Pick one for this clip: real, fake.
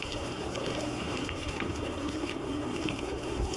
fake